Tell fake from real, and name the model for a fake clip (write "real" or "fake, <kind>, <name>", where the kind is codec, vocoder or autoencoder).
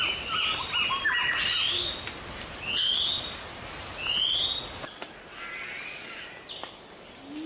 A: real